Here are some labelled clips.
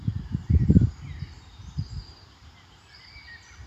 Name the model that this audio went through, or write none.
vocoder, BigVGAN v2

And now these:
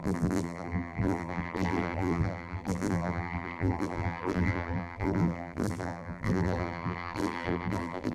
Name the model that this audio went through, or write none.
vocoder, BigVGAN v2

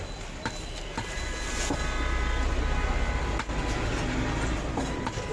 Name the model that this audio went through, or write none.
none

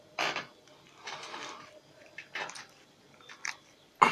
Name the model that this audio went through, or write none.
vocoder, BigVGAN v2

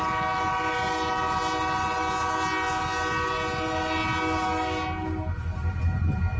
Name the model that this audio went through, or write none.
none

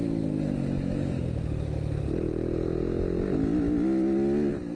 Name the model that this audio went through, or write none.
none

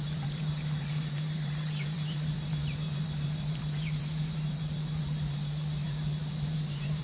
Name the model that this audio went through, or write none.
vocoder, BigVGAN v2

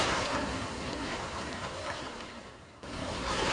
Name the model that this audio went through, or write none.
codec, SNAC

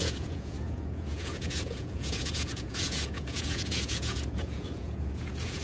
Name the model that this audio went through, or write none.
vocoder, Vocos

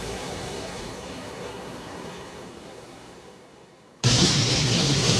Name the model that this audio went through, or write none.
codec, SNAC